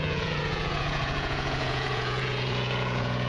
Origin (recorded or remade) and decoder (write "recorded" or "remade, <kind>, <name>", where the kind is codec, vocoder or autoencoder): remade, vocoder, Vocos